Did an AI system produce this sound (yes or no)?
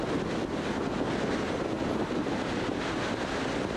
no